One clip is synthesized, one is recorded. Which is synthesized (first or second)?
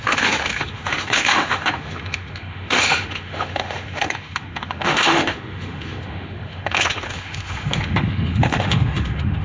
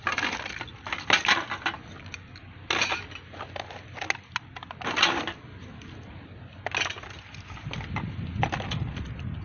first